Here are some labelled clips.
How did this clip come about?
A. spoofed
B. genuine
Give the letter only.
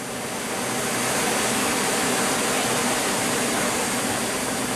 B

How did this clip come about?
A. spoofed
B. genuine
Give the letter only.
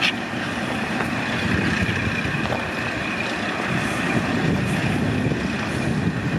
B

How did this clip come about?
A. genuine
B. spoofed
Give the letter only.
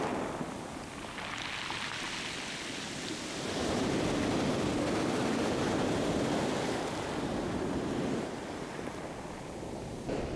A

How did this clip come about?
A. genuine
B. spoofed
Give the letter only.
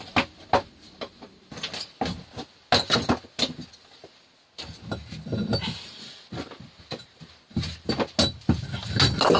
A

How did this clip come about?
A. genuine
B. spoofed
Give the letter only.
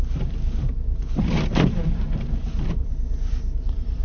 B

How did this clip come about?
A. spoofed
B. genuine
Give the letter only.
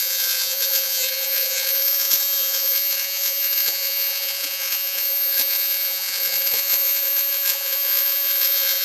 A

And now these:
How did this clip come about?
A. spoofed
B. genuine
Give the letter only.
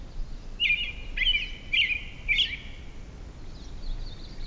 B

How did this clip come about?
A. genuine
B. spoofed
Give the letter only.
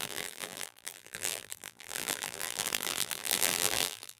B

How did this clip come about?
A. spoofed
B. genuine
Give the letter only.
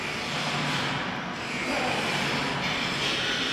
B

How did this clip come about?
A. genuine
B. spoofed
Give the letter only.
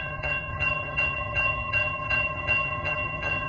B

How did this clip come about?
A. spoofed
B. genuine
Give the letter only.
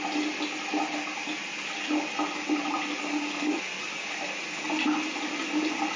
B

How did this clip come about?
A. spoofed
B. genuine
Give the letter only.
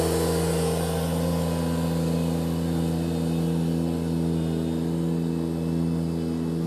B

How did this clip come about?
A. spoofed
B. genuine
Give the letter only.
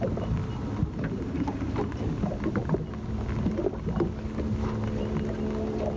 B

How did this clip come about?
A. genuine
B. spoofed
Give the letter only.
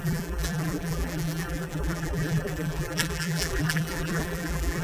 B